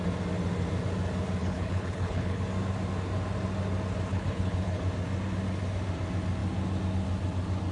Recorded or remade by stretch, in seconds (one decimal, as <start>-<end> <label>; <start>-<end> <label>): 0.0-1.4 recorded; 1.4-2.4 remade; 2.4-4.1 recorded; 4.1-4.8 remade; 4.8-7.7 recorded